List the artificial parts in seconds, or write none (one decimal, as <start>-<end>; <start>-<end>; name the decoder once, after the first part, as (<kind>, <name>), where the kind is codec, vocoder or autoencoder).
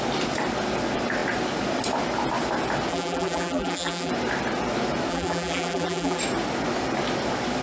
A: 2.9-4.1 (vocoder, BigVGAN v2); 5.1-6.2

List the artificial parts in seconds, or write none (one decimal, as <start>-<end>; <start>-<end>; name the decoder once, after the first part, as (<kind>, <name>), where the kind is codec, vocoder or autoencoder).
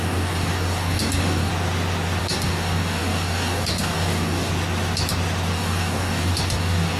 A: 0.0-1.5 (codec, DAC); 2.2-4.5; 5.5-7.0